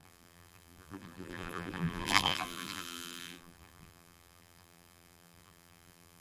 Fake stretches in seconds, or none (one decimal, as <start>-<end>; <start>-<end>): 0.0-6.2